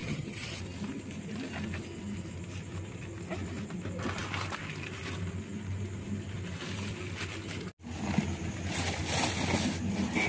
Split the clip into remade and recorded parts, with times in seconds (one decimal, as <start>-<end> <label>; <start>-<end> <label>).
0.0-0.6 remade; 0.6-10.3 recorded

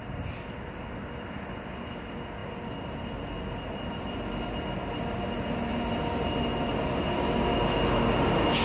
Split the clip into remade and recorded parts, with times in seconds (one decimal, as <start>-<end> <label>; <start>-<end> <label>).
0.0-8.6 recorded

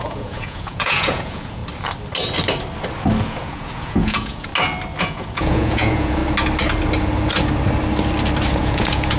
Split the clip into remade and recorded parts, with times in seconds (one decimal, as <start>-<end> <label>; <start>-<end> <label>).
0.0-1.6 remade; 1.6-3.2 recorded; 3.2-4.5 remade; 4.5-5.0 recorded; 5.0-6.2 remade; 6.2-8.6 recorded; 8.6-9.2 remade

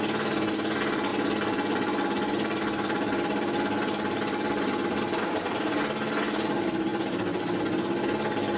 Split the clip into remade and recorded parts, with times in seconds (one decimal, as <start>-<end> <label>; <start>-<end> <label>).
0.0-1.1 recorded; 1.1-5.8 remade; 5.8-8.6 recorded